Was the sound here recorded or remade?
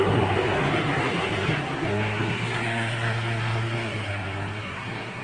remade